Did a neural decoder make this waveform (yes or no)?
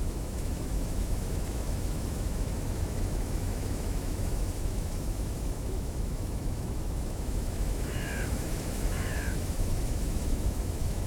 yes